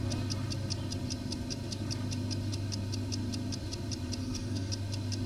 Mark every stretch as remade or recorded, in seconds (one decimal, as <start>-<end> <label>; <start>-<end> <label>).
0.0-4.2 recorded; 4.2-4.7 remade; 4.7-5.3 recorded